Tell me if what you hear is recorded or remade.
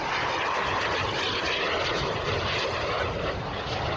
recorded